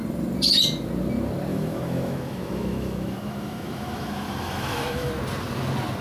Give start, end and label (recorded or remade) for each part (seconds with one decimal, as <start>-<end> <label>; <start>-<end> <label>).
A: 0.0-1.5 recorded; 1.5-5.1 remade; 5.1-6.0 recorded